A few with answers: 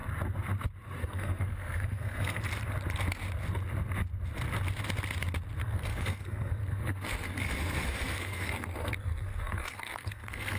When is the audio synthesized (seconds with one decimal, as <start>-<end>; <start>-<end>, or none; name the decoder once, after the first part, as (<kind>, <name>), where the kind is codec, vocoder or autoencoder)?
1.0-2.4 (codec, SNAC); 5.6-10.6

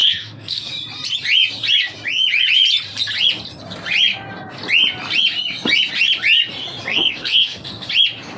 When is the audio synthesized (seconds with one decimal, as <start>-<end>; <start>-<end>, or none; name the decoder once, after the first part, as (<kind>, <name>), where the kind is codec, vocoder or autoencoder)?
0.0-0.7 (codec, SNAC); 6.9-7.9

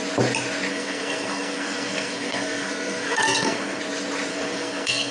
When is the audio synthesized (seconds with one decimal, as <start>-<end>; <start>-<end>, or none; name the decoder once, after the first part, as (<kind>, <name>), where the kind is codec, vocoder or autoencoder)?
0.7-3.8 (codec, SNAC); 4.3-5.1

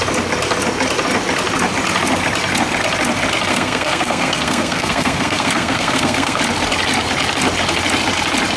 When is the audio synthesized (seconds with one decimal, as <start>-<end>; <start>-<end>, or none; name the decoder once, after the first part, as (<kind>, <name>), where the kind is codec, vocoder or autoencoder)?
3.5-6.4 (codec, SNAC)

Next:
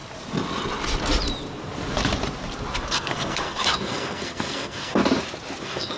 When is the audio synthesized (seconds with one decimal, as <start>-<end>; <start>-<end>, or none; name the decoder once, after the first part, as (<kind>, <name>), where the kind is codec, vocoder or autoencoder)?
2.9-5.0 (codec, SNAC); 5.6-6.0

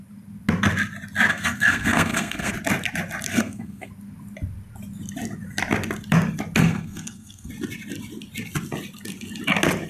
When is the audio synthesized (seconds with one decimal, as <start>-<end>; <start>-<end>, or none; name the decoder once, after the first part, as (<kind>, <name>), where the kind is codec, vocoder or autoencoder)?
1.3-2.5 (codec, SNAC); 3.3-3.9; 6.6-7.5